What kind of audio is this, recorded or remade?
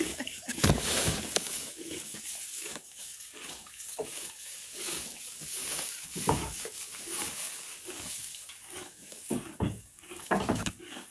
remade